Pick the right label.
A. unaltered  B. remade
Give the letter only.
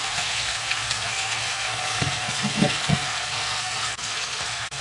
B